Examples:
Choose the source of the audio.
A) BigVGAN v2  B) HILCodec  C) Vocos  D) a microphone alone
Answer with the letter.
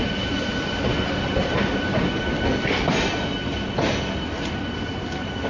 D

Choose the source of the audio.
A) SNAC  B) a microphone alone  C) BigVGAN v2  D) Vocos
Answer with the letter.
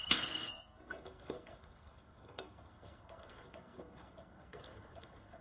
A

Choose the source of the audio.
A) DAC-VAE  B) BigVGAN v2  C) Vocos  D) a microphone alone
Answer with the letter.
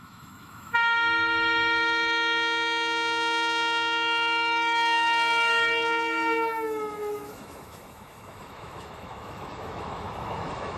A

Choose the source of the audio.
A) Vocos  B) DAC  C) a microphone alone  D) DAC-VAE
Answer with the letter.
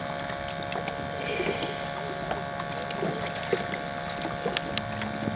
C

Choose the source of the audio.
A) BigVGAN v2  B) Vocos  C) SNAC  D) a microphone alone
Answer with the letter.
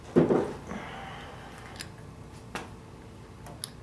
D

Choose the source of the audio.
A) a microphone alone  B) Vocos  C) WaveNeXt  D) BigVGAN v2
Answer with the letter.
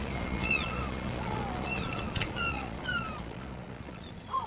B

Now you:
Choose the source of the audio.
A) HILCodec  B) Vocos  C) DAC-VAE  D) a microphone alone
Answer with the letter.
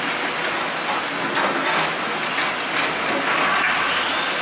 D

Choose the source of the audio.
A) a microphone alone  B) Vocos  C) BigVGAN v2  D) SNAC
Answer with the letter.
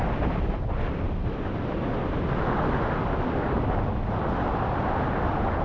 A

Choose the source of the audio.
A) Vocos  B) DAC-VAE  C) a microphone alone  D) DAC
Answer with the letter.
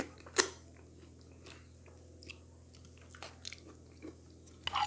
C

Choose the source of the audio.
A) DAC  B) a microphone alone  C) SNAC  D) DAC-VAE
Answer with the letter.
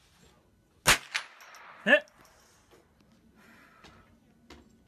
B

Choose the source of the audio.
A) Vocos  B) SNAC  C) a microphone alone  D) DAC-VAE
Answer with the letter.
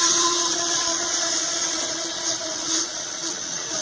A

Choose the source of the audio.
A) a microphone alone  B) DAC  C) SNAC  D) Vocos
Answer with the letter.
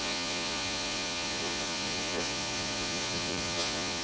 D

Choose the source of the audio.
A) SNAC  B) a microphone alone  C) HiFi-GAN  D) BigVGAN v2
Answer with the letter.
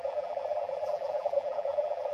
D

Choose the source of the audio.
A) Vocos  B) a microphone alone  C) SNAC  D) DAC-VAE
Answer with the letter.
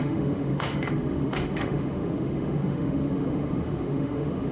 D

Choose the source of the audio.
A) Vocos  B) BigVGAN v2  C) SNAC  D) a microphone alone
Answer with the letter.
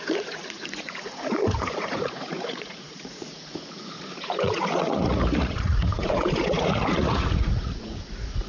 A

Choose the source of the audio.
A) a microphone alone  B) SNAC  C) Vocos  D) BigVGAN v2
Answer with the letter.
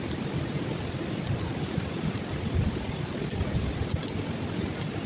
A